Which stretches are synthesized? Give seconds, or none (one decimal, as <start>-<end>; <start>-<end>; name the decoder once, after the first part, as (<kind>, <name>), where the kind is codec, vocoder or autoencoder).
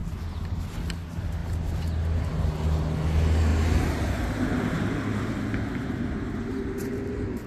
0.0-0.7 (vocoder, BigVGAN v2)